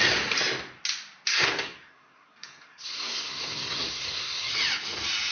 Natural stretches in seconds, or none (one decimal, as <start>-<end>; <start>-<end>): 0.0-1.3; 4.5-5.3